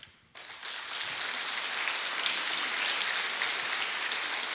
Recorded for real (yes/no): yes